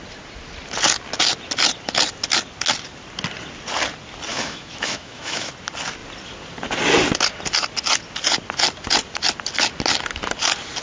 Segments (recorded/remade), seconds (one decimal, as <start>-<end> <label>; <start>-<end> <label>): 0.0-4.3 recorded; 4.3-5.5 remade; 5.5-10.8 recorded